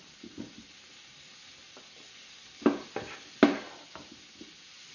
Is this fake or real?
real